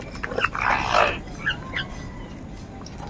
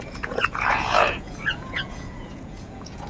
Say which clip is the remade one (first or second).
second